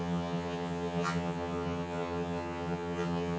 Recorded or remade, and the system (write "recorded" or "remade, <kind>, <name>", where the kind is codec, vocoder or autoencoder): remade, vocoder, HiFi-GAN